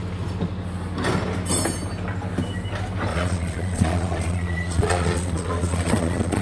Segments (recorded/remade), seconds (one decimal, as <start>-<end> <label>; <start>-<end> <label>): 0.0-3.1 recorded; 3.1-6.4 remade